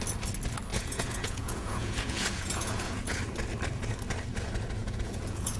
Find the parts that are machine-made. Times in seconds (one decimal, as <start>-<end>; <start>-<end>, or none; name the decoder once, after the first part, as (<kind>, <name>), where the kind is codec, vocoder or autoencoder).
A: 0.7-3.2 (vocoder, Vocos); 4.8-5.6